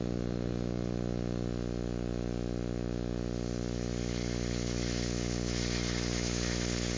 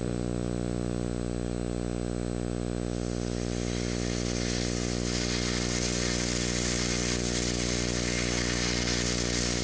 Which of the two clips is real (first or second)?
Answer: second